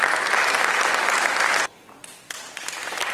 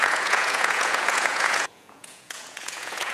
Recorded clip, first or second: first